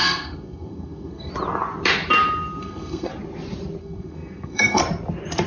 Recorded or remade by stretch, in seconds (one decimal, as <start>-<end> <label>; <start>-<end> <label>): 0.0-1.3 remade; 1.3-2.6 recorded; 2.6-3.1 remade; 3.1-3.8 recorded; 3.8-4.8 remade; 4.8-5.5 recorded